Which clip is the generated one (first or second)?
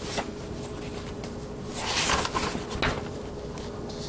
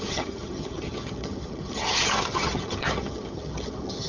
second